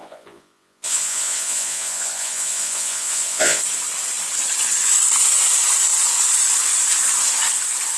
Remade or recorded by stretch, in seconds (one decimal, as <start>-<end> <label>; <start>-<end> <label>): 0.0-3.6 remade; 3.6-8.0 recorded